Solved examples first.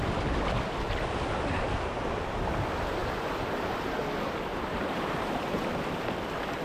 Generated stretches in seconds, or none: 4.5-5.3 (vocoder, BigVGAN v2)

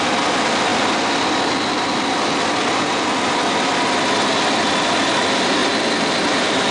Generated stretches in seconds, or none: none

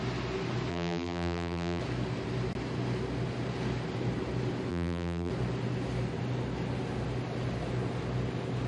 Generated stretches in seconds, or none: 0.7-1.8 (vocoder, BigVGAN v2); 4.7-5.3

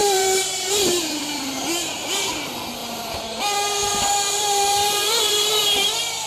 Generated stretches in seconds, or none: 0.0-2.3 (vocoder, BigVGAN v2); 2.8-3.4; 3.8-5.6

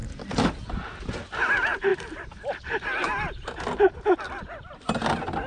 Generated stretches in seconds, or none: 1.9-4.2 (vocoder, BigVGAN v2)

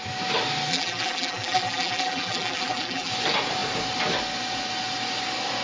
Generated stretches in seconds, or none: 0.7-3.1 (vocoder, BigVGAN v2)

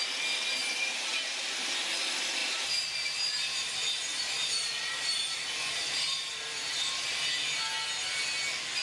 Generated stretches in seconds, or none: 0.6-1.9 (vocoder, BigVGAN v2); 2.4-7.6